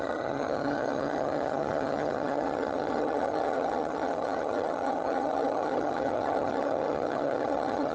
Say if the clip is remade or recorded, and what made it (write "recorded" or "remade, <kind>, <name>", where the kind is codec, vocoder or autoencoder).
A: remade, vocoder, HiFi-GAN